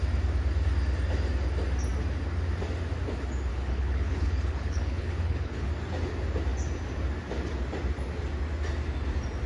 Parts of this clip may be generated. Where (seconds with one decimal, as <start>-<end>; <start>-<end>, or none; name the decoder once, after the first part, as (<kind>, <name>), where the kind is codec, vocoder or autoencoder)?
3.5-5.7 (codec, HILCodec)